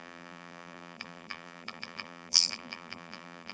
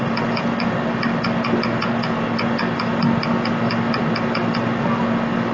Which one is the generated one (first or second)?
first